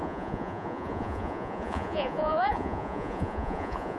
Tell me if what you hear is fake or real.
fake